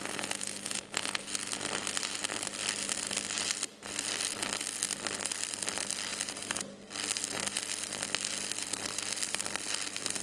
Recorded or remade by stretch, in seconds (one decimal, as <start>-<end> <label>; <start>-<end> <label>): 0.0-10.2 recorded